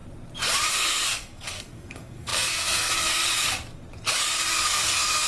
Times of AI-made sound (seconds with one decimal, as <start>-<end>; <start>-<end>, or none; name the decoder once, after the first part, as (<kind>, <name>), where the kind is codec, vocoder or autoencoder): 0.7-3.2 (codec, SNAC); 4.5-5.3